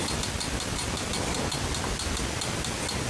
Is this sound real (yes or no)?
yes